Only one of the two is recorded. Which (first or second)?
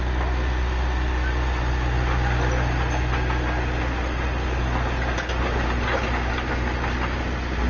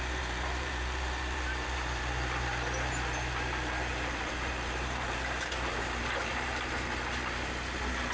first